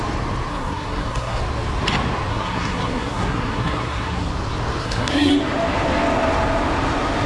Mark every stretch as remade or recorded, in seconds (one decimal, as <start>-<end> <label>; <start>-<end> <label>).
0.0-0.5 recorded; 0.5-1.4 remade; 1.4-2.3 recorded; 2.3-4.3 remade; 4.3-4.8 recorded; 4.8-5.3 remade; 5.3-7.3 recorded